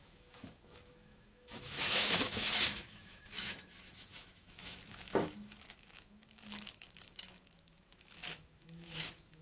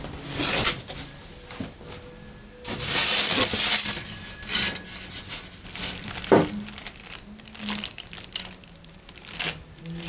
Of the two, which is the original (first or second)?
second